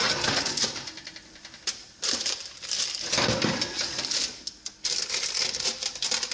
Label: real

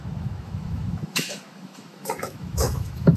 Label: fake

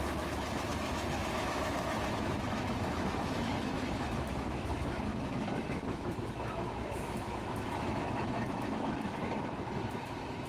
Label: fake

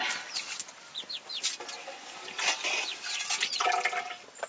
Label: real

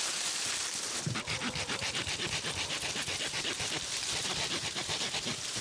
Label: real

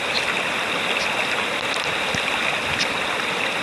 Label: real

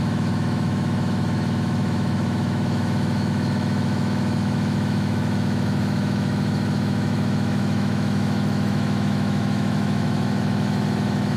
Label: fake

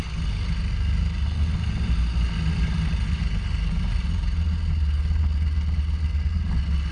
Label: real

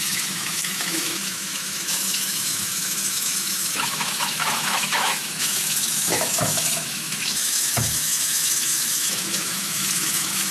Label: fake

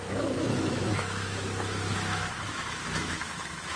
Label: fake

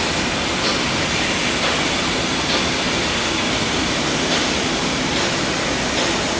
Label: real